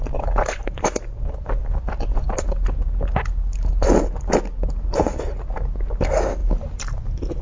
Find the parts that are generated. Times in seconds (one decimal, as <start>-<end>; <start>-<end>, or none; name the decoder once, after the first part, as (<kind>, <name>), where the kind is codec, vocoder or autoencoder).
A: none